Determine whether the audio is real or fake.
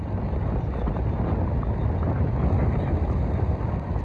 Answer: real